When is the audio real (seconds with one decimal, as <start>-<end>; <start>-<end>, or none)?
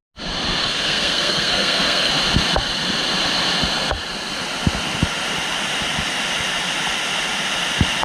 0.0-0.6; 2.1-8.0